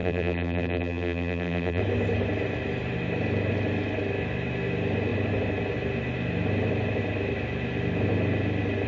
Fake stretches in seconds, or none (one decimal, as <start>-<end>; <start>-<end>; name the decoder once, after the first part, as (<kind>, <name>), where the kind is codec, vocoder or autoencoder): 0.0-1.8 (vocoder, BigVGAN v2)

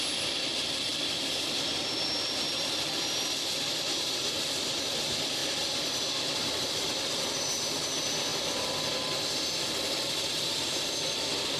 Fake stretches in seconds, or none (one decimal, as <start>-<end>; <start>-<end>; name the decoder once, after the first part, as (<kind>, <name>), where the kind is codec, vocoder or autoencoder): 0.9-2.4 (vocoder, BigVGAN v2); 5.4-5.9

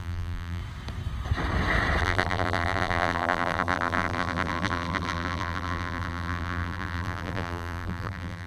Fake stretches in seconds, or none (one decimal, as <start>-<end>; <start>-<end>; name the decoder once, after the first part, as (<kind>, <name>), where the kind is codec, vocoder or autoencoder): 0.0-0.6 (vocoder, BigVGAN v2); 2.0-8.5

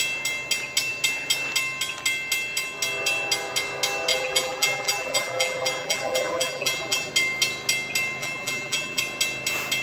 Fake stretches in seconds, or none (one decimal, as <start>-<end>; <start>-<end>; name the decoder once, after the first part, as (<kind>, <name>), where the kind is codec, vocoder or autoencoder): 4.1-7.1 (vocoder, BigVGAN v2); 8.2-9.0

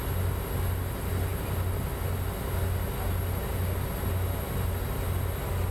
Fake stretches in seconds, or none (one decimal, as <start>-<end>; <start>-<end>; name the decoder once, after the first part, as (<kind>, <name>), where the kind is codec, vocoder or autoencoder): none